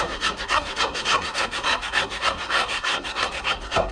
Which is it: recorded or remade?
remade